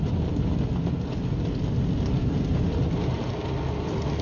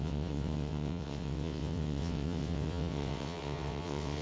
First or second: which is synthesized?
second